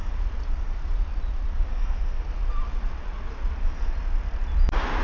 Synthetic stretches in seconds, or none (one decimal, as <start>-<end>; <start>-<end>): none